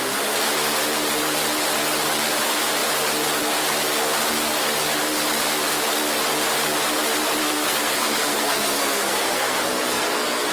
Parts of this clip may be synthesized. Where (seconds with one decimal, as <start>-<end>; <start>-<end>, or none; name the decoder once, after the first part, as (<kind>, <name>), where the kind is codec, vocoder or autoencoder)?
7.4-10.5 (codec, SNAC)